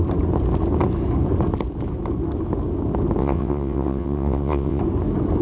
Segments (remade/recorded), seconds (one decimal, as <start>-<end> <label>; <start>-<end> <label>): 0.0-3.2 recorded; 3.2-4.8 remade; 4.8-5.4 recorded

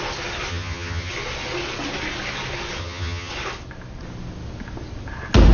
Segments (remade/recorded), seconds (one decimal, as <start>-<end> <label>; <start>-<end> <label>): 0.0-0.5 recorded; 0.5-1.1 remade; 1.1-2.8 recorded; 2.8-3.3 remade; 3.3-5.5 recorded

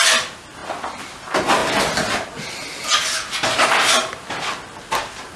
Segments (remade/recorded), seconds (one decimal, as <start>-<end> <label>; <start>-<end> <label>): 0.0-5.4 recorded

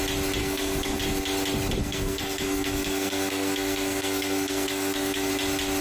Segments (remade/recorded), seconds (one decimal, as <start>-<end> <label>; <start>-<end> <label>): 0.0-0.4 recorded; 0.4-1.0 remade; 1.0-1.8 recorded; 1.8-5.3 remade; 5.3-5.8 recorded

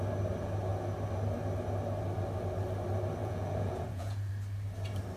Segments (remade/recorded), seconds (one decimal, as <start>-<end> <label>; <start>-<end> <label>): 0.0-3.2 recorded; 3.2-4.3 remade; 4.3-5.2 recorded

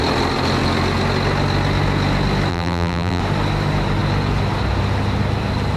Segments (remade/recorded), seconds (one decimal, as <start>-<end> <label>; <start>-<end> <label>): 0.0-2.5 recorded; 2.5-3.2 remade; 3.2-5.8 recorded

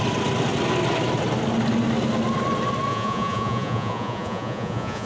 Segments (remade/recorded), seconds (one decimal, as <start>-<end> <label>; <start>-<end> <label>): 0.0-2.9 recorded; 2.9-5.1 remade

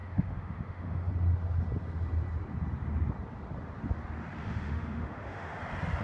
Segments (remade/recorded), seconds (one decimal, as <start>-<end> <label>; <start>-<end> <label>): 0.0-1.1 remade; 1.1-4.4 recorded; 4.4-5.6 remade; 5.6-6.0 recorded